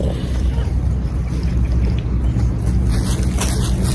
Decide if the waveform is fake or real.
real